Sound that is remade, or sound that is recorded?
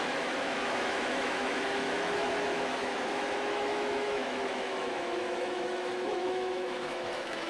remade